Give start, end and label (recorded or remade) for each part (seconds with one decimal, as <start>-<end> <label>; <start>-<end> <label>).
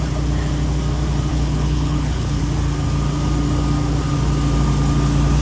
0.0-1.3 recorded; 1.3-2.4 remade; 2.4-5.4 recorded